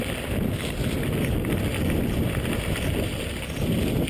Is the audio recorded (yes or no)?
yes